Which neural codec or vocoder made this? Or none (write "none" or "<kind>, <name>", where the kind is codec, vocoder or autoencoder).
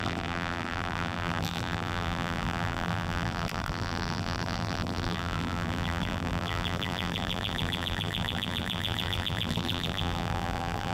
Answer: vocoder, BigVGAN v2